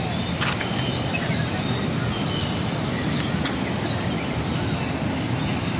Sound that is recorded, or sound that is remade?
recorded